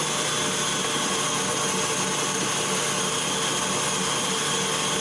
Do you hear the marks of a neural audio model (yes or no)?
no